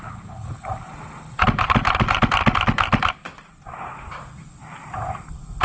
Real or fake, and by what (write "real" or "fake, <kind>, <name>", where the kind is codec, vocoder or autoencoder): real